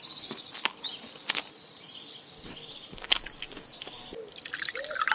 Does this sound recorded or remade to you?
recorded